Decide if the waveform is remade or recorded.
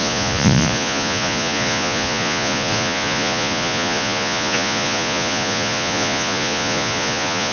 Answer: remade